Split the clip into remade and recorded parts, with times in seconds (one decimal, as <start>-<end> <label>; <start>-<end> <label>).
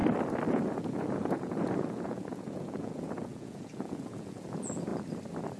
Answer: 0.0-0.5 recorded; 0.5-4.9 remade; 4.9-5.6 recorded